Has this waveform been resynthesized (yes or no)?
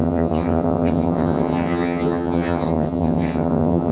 yes